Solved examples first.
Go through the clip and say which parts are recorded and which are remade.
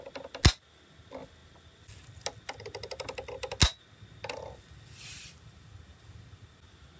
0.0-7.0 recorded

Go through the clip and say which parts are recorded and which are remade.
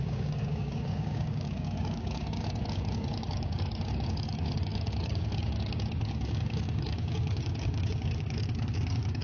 0.0-9.2 remade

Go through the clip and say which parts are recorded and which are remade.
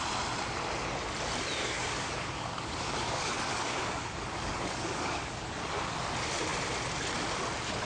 0.0-1.6 recorded; 1.6-5.9 remade; 5.9-7.8 recorded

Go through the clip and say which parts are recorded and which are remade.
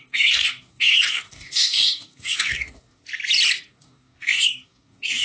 0.0-3.0 remade; 3.0-3.6 recorded; 3.6-5.2 remade